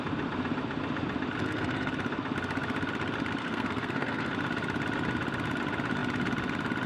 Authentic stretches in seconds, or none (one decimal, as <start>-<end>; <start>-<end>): 0.0-1.4; 1.9-3.4; 4.3-6.9